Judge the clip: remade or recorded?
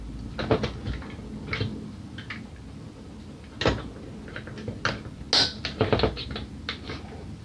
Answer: recorded